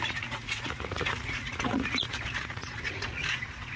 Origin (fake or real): fake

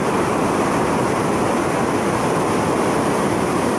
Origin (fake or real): real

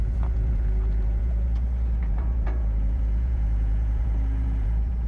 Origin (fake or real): fake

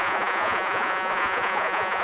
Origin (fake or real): fake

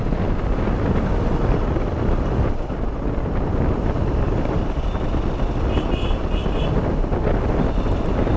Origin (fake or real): real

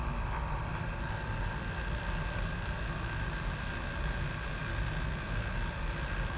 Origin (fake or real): real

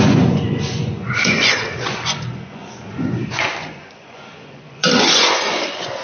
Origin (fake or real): fake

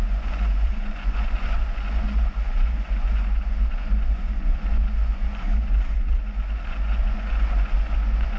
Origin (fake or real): fake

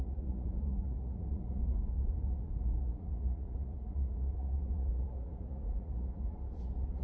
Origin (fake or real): fake